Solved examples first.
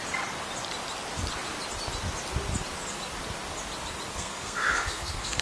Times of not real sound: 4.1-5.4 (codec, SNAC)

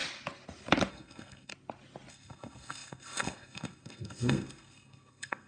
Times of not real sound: 0.9-1.5 (codec, SNAC); 2.1-5.5

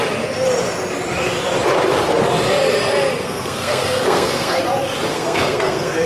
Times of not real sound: 3.2-4.6 (codec, SNAC); 5.1-6.1

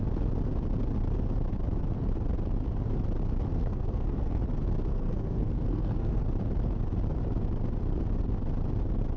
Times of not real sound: 3.5-4.4 (codec, SNAC); 4.9-6.2

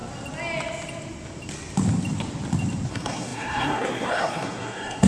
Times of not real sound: 2.9-5.1 (codec, SNAC)

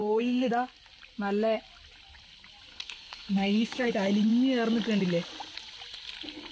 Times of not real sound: 0.0-0.5 (codec, SNAC); 2.7-3.9

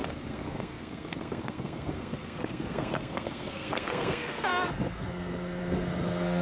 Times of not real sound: 0.0-6.4 (codec, SNAC)

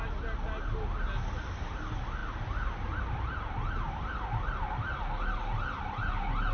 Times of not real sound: none